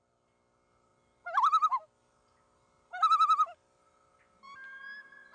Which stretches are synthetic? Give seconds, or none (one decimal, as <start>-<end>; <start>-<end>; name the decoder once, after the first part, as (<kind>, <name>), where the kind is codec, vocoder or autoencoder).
none